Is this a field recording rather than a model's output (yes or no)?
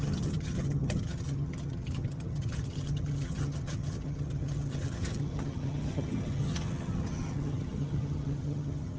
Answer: no